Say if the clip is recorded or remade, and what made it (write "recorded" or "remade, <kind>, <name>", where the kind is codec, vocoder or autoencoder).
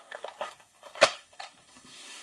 remade, codec, SNAC